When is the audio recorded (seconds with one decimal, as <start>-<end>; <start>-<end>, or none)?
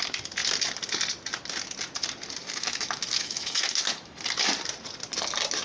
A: 0.0-2.4; 4.2-5.6